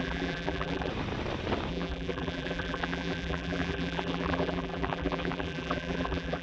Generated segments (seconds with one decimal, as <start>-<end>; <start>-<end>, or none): 0.0-0.9; 1.7-6.4